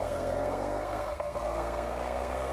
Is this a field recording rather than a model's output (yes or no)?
no